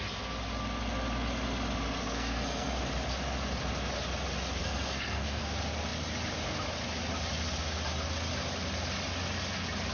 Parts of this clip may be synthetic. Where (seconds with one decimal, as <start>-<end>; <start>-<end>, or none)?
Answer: 2.0-2.8; 4.6-5.4